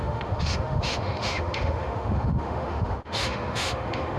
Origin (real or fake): fake